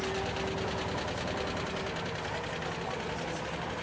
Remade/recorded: recorded